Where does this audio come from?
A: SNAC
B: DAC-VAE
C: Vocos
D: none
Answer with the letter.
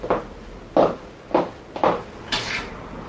D